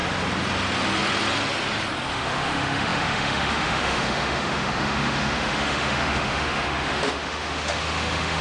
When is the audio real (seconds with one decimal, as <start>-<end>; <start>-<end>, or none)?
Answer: 0.0-2.1